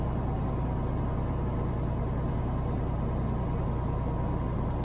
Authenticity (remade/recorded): recorded